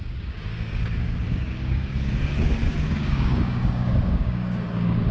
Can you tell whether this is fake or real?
fake